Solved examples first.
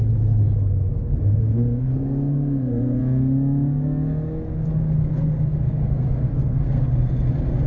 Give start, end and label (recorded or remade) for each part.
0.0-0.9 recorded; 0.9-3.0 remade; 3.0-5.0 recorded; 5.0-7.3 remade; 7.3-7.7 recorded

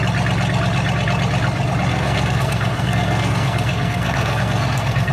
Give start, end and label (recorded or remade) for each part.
0.0-1.9 recorded; 1.9-5.1 remade

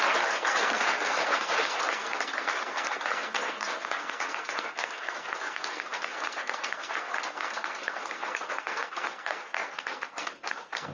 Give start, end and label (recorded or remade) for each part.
0.0-10.9 remade

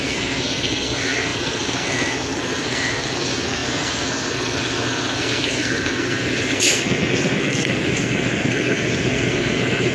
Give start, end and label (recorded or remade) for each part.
0.0-9.9 remade

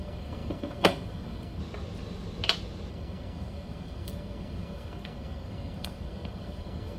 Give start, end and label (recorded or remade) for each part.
0.0-1.6 remade; 1.6-2.9 recorded; 2.9-7.0 remade

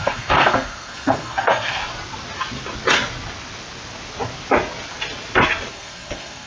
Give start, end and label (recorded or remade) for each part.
0.0-1.8 remade; 1.8-5.7 recorded; 5.7-6.5 remade

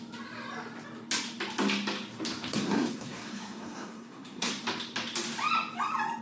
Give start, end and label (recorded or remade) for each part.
0.0-2.5 recorded; 2.5-4.5 remade; 4.5-6.2 recorded

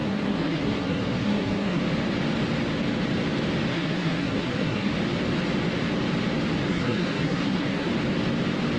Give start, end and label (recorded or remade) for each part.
0.0-1.8 remade; 1.8-3.7 recorded; 3.7-4.9 remade; 4.9-6.7 recorded; 6.7-7.9 remade; 7.9-8.8 recorded